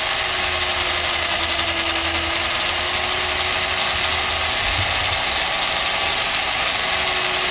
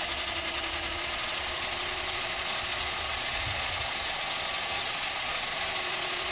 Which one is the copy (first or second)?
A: second